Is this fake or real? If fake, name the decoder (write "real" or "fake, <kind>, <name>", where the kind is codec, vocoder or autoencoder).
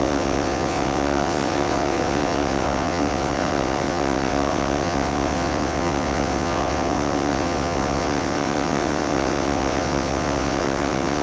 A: fake, vocoder, WaveNeXt